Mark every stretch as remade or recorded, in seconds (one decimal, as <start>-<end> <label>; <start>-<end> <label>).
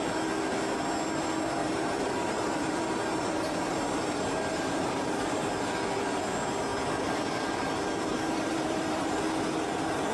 0.0-1.6 recorded; 1.6-5.5 remade; 5.5-8.1 recorded; 8.1-9.2 remade; 9.2-10.1 recorded